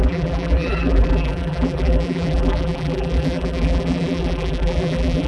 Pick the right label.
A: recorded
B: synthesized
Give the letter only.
B